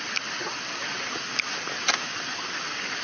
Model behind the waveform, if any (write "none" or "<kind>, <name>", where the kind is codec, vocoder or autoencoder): none